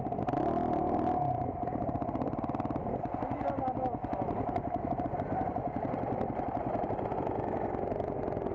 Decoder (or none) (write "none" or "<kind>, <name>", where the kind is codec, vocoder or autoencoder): none